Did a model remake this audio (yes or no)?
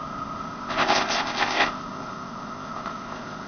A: yes